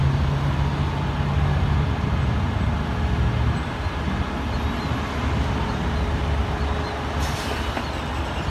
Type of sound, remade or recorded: recorded